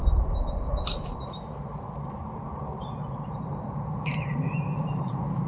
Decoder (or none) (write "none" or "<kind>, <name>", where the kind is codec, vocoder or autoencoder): vocoder, BigVGAN v2